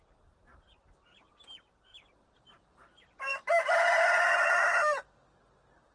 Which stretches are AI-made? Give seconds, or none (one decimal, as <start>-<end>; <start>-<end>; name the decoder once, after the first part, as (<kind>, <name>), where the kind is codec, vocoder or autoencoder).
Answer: 0.5-3.9 (vocoder, BigVGAN v2)